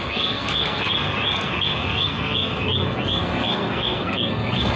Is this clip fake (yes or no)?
yes